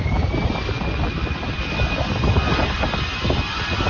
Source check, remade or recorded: recorded